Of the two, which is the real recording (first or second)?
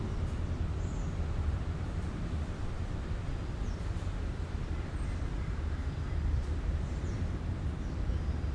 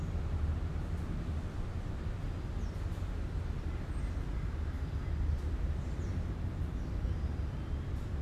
second